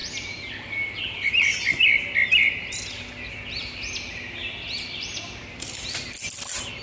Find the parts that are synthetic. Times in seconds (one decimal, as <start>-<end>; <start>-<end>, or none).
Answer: 0.0-0.5